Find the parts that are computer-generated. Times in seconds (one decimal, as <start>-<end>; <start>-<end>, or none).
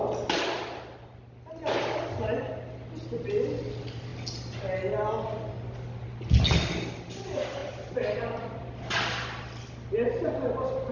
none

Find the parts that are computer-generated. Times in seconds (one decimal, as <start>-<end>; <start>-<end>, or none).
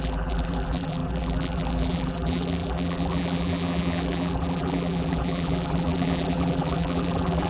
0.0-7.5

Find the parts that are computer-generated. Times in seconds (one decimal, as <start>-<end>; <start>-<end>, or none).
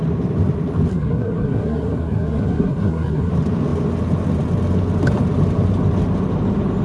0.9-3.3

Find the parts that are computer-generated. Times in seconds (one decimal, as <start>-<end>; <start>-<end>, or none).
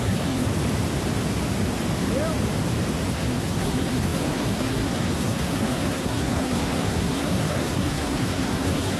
0.0-0.5; 3.1-9.0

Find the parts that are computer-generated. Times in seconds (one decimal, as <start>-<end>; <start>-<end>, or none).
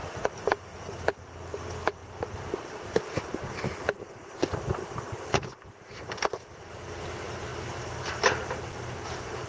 0.0-0.8; 2.0-4.0; 5.3-6.0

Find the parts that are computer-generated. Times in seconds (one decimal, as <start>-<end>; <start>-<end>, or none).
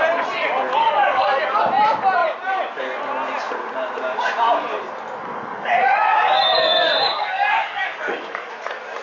0.8-1.6; 5.3-8.5